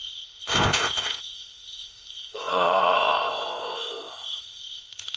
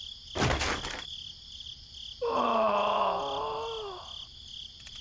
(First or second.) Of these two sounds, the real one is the second